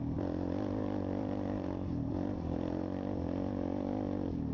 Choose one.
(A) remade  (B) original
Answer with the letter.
A